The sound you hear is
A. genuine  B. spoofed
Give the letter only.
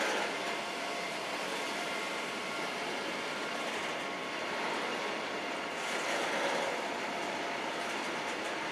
B